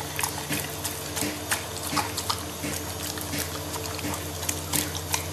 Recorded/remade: recorded